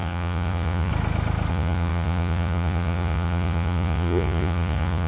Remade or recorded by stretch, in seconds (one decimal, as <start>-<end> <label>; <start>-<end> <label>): 0.0-0.9 remade; 0.9-1.5 recorded; 1.5-5.1 remade